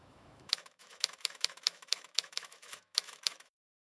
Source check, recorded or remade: remade